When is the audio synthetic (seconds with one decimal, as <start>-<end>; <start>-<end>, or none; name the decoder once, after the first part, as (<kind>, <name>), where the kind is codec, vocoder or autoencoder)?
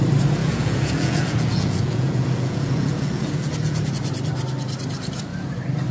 0.4-3.9 (vocoder, Vocos)